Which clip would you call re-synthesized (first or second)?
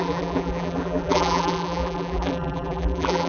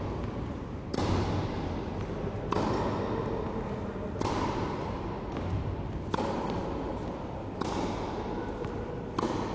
first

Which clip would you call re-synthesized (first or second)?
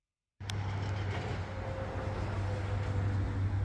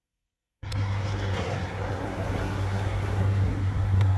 second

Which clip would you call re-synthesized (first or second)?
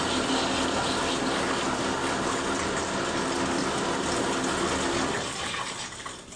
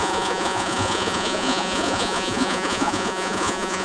second